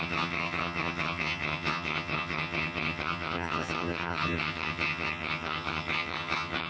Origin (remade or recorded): remade